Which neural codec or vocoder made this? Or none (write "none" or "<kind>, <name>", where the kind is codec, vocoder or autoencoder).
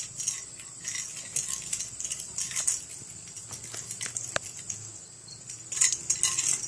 none